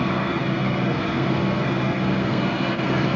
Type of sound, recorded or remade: remade